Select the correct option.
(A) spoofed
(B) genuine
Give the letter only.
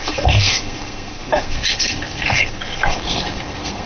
A